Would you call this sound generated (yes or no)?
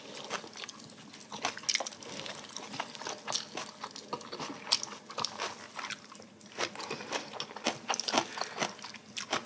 no